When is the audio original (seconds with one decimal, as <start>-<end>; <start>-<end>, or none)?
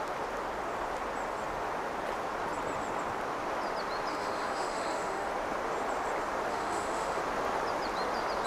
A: 0.0-4.1; 5.3-6.5; 7.2-8.5